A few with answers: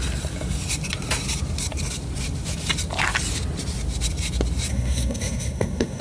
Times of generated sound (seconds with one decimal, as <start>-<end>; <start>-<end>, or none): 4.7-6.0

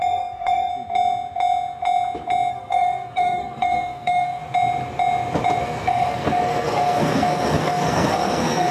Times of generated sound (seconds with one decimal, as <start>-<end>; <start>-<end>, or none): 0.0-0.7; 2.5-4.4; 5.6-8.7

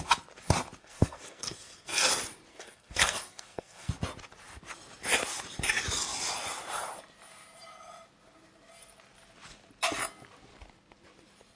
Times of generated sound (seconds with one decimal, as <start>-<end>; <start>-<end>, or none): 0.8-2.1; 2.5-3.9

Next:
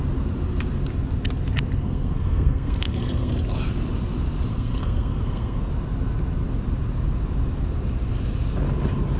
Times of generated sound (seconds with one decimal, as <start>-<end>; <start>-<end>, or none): 1.8-3.3; 4.5-5.7